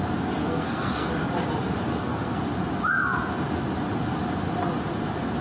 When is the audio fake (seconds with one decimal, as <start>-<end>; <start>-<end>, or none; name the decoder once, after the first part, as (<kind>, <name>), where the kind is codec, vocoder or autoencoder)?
0.4-1.1 (codec, SNAC); 1.9-2.4